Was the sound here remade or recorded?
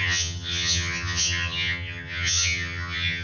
remade